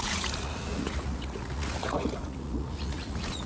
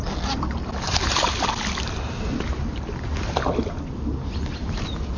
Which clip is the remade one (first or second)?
first